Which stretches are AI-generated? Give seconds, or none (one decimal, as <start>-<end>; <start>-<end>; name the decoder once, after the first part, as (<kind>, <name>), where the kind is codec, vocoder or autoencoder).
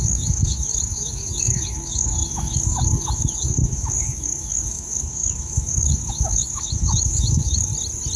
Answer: 0.0-7.7 (autoencoder, DAC-VAE)